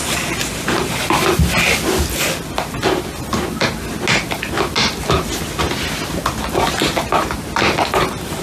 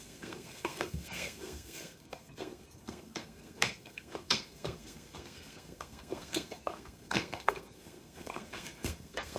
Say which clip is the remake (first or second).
second